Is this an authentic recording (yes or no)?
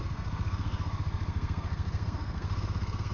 no